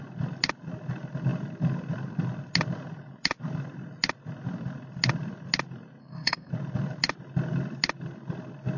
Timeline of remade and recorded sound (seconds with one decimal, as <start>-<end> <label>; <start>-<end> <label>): 0.0-6.0 recorded; 6.0-6.5 remade; 6.5-8.8 recorded